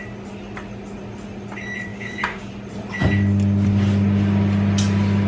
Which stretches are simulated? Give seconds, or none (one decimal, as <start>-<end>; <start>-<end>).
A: 1.9-2.5